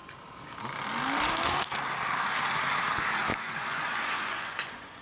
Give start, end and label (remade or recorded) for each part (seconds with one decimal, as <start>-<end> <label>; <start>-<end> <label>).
0.0-3.3 recorded; 3.3-5.0 remade